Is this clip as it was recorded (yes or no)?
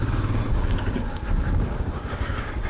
no